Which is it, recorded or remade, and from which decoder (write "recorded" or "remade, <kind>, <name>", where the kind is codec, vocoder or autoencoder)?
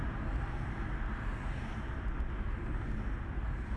recorded